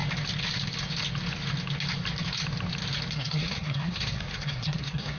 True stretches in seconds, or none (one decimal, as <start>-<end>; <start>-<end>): 0.0-3.1